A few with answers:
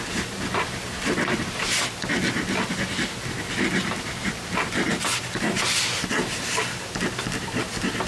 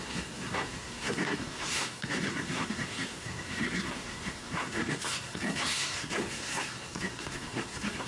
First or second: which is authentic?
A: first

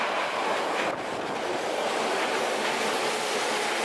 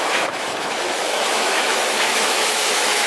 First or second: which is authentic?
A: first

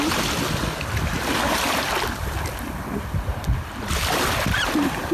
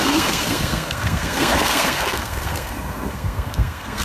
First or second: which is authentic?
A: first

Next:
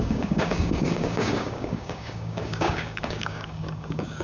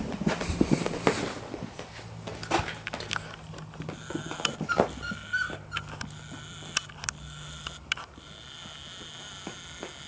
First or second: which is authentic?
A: second